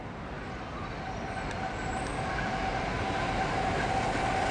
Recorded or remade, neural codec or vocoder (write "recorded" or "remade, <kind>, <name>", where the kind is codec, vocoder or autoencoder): recorded